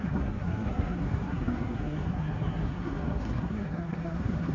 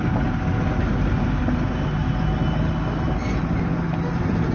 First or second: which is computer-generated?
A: first